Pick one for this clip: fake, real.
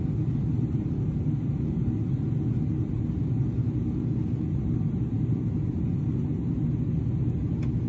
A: real